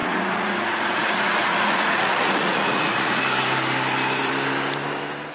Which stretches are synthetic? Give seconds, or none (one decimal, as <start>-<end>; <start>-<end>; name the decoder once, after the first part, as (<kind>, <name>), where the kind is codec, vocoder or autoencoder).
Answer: 0.0-3.2 (vocoder, Vocos)